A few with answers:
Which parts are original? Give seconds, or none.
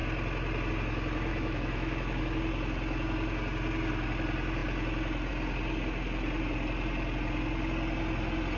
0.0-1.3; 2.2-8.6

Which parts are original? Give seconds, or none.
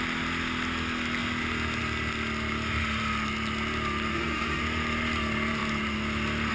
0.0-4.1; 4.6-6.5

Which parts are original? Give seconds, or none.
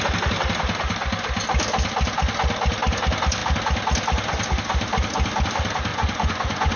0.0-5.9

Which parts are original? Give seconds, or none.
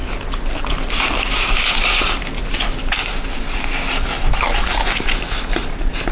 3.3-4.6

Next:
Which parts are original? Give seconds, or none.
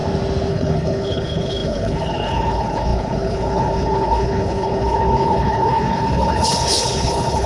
0.0-0.5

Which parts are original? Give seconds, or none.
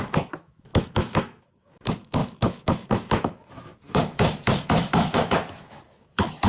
none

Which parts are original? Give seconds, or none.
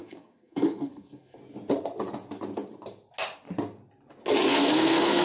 1.4-4.5